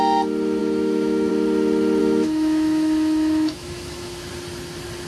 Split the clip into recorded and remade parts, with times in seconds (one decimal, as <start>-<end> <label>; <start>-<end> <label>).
0.0-0.6 recorded; 0.6-1.3 remade; 1.3-2.0 recorded; 2.0-4.3 remade; 4.3-5.1 recorded